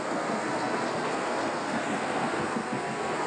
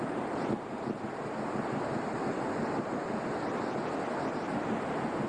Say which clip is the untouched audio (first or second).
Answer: second